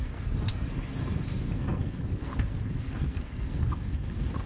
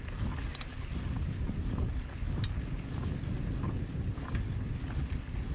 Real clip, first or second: second